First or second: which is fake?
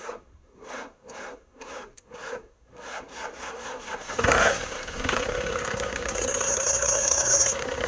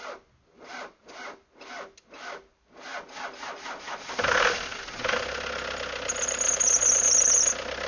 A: first